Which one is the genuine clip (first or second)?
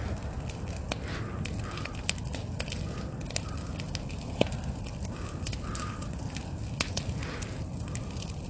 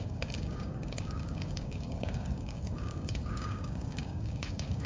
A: first